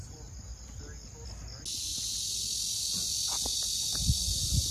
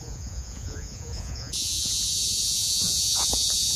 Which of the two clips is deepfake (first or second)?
second